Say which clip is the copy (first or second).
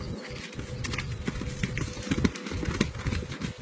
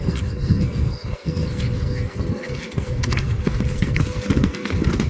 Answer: second